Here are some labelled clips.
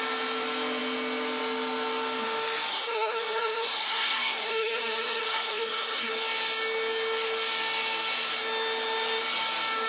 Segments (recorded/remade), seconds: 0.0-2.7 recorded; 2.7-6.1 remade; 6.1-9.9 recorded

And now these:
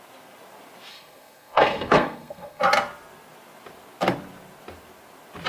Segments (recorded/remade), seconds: 0.0-0.9 recorded; 0.9-2.6 remade; 2.6-5.5 recorded

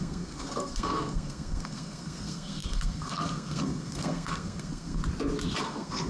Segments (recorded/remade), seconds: 0.0-5.0 remade; 5.0-5.6 recorded; 5.6-6.1 remade

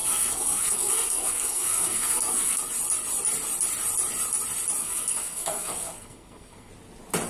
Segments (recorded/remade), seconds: 0.0-2.6 remade; 2.6-4.8 recorded; 4.8-6.7 remade; 6.7-7.3 recorded

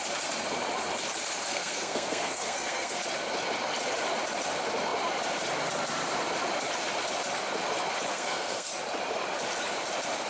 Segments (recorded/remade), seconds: 0.0-1.5 recorded; 1.5-3.0 remade; 3.0-8.1 recorded; 8.1-8.7 remade; 8.7-10.3 recorded

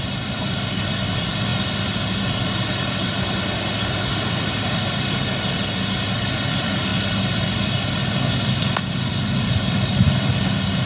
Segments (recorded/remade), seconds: 0.0-10.9 recorded

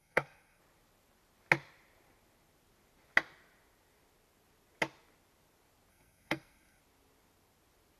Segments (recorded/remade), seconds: 0.0-0.6 remade; 0.6-5.9 recorded; 5.9-6.8 remade; 6.8-8.0 recorded